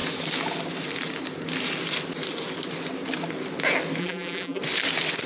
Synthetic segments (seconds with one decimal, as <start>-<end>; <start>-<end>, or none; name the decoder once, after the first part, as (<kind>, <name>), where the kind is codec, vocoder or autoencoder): 4.0-4.6 (vocoder, BigVGAN v2)